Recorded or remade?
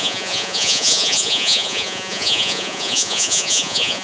remade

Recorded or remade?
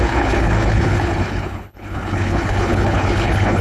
remade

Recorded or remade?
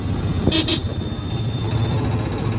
recorded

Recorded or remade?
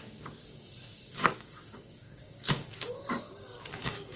remade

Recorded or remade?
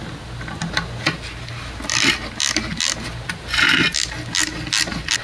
recorded